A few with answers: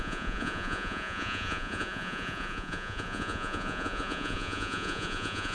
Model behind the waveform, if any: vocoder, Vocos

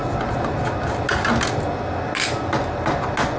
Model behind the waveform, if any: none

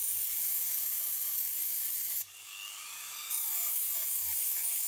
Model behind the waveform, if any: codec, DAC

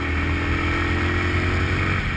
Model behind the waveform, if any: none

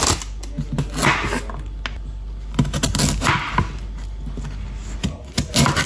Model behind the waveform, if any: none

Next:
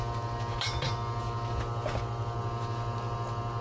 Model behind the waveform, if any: none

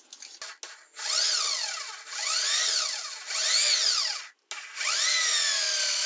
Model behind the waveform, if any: none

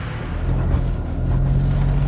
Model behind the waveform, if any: none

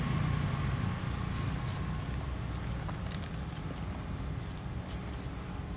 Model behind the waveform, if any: none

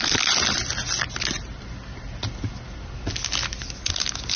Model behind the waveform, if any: none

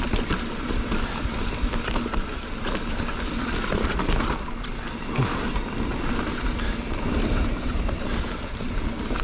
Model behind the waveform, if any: none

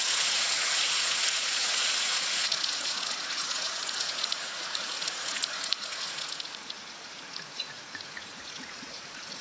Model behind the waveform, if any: vocoder, Vocos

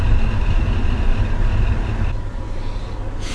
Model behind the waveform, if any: none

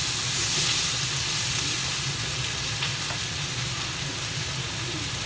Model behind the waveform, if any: none